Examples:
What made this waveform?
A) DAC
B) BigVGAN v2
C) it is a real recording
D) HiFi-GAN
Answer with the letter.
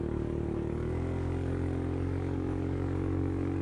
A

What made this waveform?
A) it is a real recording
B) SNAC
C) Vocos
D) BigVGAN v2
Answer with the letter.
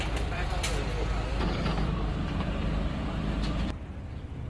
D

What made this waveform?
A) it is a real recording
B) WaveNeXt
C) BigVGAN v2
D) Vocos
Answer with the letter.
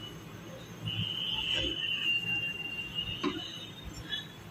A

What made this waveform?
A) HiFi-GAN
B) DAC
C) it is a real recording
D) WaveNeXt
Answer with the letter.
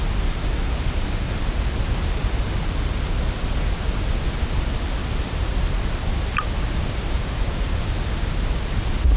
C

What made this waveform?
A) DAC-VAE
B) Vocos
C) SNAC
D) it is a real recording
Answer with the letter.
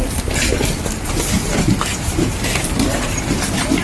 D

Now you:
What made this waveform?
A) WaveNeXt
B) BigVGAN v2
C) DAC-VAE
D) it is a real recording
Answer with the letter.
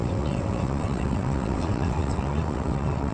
A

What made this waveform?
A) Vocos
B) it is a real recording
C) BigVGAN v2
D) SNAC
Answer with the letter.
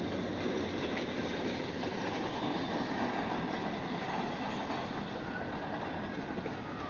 B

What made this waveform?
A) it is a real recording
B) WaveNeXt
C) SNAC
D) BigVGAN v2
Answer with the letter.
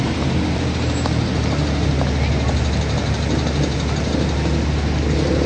A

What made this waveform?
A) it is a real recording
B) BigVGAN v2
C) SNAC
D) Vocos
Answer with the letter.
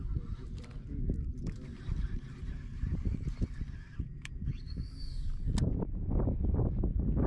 A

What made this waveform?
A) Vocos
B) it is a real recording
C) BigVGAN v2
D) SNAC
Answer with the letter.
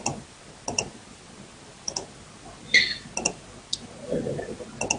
B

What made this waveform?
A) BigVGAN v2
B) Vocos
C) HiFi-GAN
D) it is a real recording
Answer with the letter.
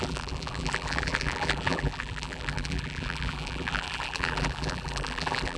A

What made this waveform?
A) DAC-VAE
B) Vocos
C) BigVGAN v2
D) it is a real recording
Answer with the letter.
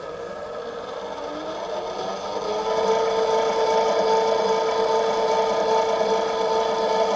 D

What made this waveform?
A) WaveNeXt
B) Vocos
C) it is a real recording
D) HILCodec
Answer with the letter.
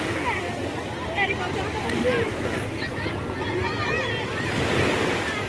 C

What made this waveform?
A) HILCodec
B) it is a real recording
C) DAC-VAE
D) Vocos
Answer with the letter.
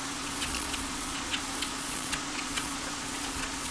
D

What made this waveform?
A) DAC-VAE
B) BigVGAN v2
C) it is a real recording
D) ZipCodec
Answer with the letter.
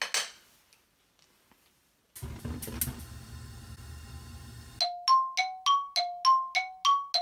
C